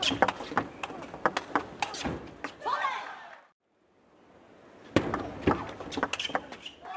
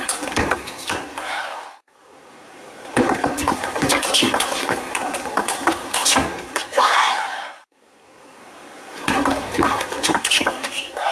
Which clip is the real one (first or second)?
first